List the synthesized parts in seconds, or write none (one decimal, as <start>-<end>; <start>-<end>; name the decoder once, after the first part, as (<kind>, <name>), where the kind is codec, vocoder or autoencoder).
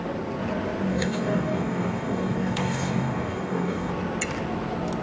0.9-3.9 (codec, DAC)